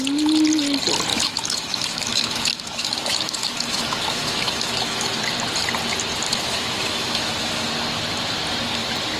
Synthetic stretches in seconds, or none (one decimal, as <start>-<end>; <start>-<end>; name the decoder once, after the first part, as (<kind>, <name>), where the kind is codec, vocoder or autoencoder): 1.1-5.2 (autoencoder, DAC-VAE); 6.3-7.7